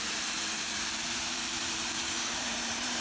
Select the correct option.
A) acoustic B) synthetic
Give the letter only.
B